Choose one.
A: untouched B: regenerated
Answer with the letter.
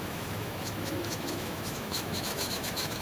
B